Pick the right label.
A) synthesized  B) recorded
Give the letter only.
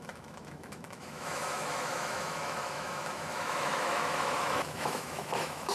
A